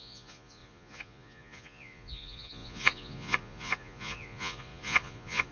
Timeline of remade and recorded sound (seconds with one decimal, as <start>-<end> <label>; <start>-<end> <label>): 0.0-5.5 remade